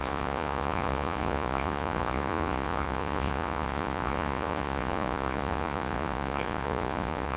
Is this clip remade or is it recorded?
remade